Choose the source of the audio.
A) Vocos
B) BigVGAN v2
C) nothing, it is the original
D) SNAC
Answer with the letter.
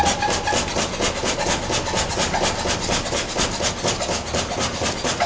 C